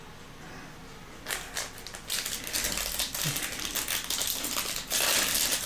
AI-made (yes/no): no